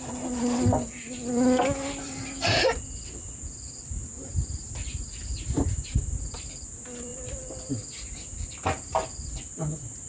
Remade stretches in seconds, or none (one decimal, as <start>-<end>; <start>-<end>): 4.1-4.7; 5.2-6.6